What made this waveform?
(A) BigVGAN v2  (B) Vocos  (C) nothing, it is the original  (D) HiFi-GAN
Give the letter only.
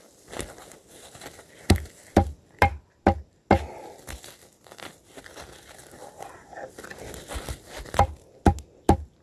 C